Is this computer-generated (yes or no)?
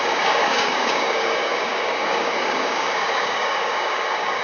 yes